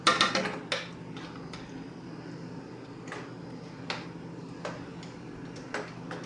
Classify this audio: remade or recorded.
recorded